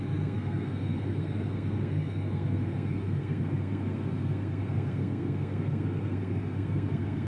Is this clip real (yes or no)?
no